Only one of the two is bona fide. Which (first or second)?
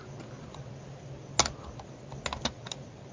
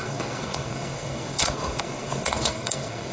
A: first